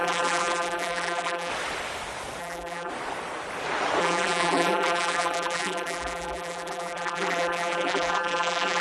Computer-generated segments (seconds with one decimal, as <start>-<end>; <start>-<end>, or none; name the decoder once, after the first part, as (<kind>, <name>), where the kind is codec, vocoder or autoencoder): 0.0-1.5 (vocoder, BigVGAN v2); 2.4-2.9; 4.0-8.8